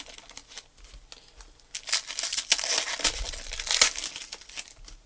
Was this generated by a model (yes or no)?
no